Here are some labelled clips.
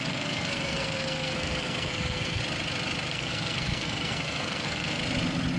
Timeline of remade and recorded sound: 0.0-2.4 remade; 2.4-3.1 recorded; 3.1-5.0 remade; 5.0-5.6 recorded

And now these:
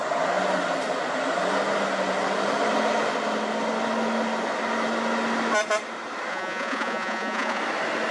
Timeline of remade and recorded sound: 0.0-6.3 recorded; 6.3-7.6 remade; 7.6-8.1 recorded